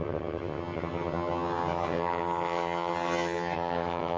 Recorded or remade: remade